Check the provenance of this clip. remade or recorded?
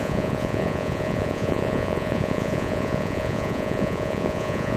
remade